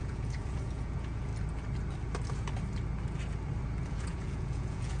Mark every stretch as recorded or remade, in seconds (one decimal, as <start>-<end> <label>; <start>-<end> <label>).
0.0-1.3 remade; 1.3-3.9 recorded; 3.9-5.0 remade